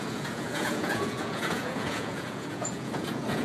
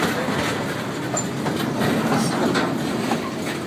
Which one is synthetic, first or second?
first